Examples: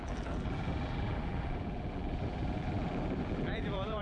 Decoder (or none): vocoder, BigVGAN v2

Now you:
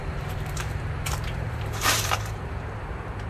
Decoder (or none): vocoder, BigVGAN v2